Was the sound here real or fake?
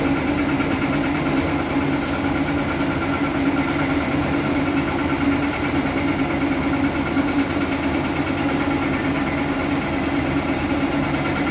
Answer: real